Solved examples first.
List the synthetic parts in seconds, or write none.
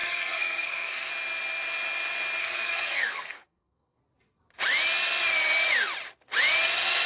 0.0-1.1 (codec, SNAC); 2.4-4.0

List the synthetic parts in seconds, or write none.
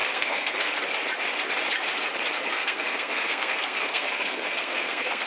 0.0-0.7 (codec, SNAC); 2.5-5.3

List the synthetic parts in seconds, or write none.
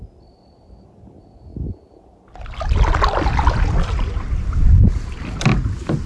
none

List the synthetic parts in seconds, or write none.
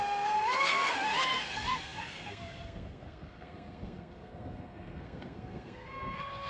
0.0-6.5 (codec, SNAC)